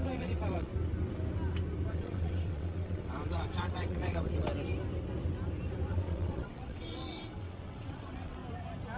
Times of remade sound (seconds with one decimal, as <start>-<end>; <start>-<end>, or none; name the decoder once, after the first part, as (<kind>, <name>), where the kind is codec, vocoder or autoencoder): 0.0-0.7 (vocoder, WaveNeXt); 1.9-4.5; 5.9-8.4